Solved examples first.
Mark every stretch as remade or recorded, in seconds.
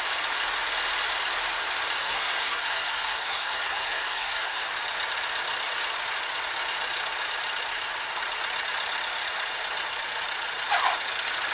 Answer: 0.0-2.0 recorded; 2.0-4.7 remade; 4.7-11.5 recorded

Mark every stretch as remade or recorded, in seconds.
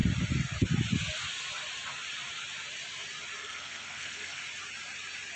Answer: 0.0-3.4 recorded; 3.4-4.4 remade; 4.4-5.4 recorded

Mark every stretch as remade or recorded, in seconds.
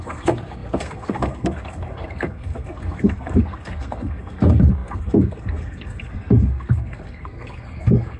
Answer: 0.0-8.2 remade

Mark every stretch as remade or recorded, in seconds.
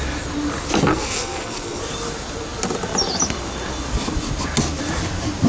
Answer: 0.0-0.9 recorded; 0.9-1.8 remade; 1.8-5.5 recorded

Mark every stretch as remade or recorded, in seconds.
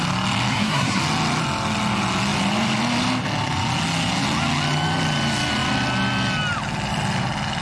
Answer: 0.0-0.5 recorded; 0.5-1.0 remade; 1.0-7.6 recorded